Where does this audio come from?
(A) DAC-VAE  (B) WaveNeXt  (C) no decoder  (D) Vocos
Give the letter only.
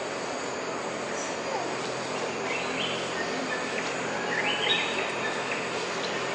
C